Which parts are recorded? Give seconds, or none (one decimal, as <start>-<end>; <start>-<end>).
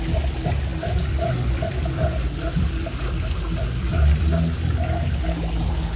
0.0-0.7; 4.3-6.0